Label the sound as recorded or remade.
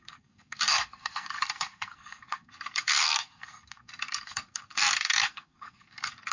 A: remade